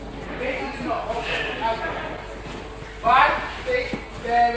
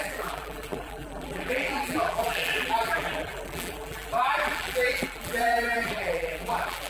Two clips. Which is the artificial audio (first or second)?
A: second